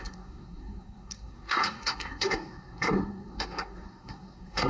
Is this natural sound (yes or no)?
no